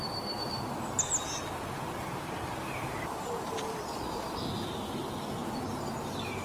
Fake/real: real